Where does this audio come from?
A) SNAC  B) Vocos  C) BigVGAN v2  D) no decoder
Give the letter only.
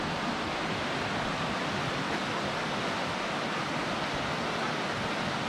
D